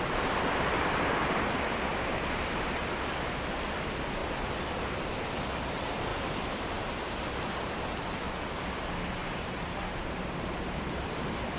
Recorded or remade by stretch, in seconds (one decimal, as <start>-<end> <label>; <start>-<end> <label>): 0.0-1.9 recorded; 1.9-2.8 remade; 2.8-4.2 recorded; 4.2-4.9 remade; 4.9-6.1 recorded; 6.1-7.8 remade; 7.8-9.2 recorded; 9.2-11.6 remade